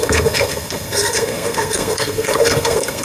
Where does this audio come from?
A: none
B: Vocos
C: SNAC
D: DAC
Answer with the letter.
C